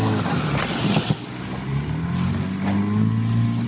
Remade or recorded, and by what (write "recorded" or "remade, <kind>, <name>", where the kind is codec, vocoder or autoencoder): recorded